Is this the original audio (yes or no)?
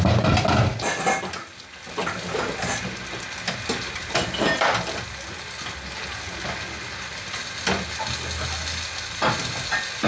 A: yes